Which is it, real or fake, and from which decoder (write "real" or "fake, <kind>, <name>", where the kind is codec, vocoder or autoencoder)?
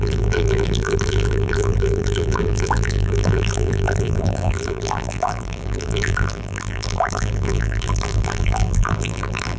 fake, vocoder, BigVGAN v2